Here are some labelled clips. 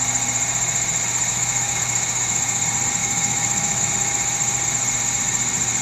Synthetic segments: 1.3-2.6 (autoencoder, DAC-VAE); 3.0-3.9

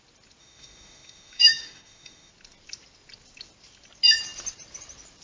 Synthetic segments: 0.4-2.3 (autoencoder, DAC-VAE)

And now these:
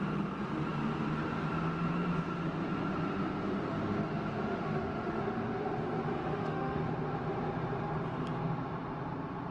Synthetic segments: 4.5-5.2 (autoencoder, DAC-VAE); 6.2-6.8

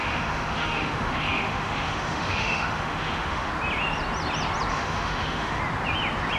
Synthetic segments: 0.0-3.5 (autoencoder, DAC-VAE); 4.7-5.6